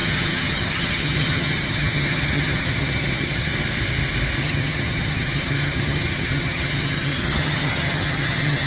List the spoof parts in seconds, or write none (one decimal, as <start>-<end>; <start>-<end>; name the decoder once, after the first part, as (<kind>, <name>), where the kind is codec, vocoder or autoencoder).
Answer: 0.0-3.5 (vocoder, HiFi-GAN); 4.4-8.7